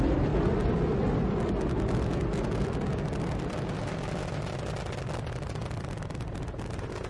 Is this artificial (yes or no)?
no